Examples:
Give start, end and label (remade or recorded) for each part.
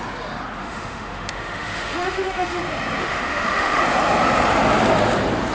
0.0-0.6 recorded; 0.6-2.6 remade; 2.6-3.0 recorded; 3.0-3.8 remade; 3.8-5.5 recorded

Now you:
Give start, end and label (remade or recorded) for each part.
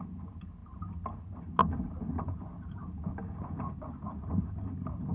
0.0-5.1 recorded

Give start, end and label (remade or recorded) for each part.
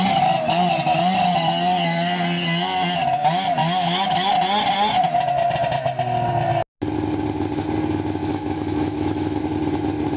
0.0-3.6 recorded; 3.6-4.3 remade; 4.3-8.2 recorded; 8.2-9.4 remade; 9.4-10.2 recorded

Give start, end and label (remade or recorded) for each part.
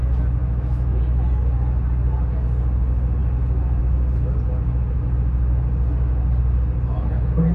0.0-0.4 recorded; 0.4-1.0 remade; 1.0-7.5 recorded